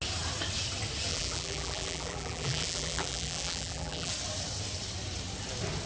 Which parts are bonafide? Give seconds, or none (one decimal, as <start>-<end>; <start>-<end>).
0.0-1.1; 4.1-5.9